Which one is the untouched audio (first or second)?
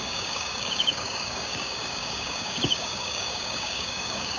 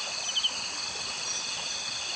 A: second